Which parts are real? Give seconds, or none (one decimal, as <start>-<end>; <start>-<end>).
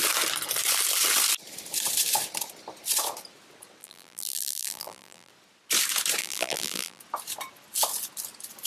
0.0-3.8; 5.3-6.2; 7.0-8.7